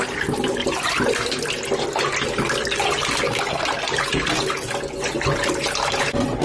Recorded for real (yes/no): yes